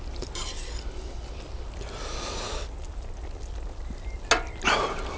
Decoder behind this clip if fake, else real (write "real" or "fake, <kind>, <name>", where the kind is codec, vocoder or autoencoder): real